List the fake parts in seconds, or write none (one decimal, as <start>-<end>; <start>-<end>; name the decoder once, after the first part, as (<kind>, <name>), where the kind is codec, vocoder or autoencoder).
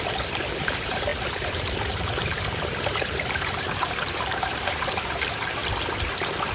0.0-5.6 (vocoder, BigVGAN v2)